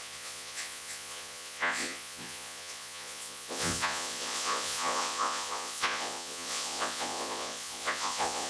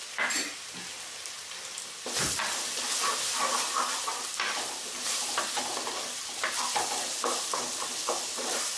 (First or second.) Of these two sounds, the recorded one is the second